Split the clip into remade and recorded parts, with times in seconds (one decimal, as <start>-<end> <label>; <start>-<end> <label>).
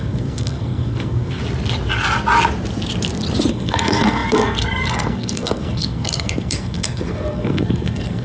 0.0-1.4 remade; 1.4-3.5 recorded; 3.5-8.2 remade